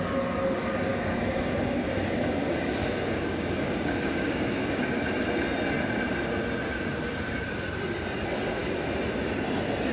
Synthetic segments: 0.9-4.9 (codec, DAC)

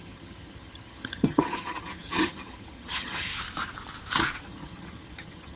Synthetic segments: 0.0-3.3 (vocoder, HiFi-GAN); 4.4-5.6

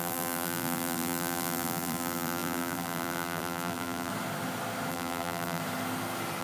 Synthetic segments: 0.0-4.1 (vocoder, BigVGAN v2); 4.9-5.6

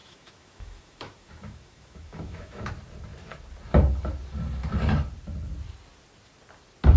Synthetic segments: 0.0-2.7 (autoencoder, DAC-VAE)

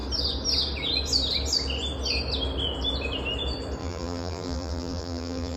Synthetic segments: 3.8-5.6 (vocoder, BigVGAN v2)

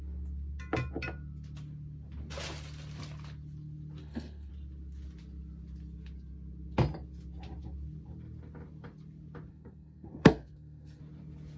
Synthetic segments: 4.0-4.5 (codec, SNAC); 9.5-11.0

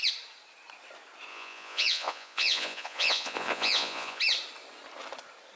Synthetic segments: 1.3-4.2 (vocoder, Vocos)